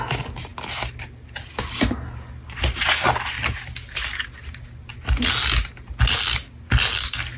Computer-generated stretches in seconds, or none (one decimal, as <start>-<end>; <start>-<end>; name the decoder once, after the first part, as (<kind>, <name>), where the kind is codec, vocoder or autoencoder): none